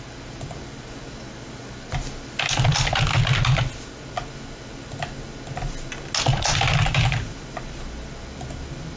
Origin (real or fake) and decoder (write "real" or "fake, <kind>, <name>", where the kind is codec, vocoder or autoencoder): real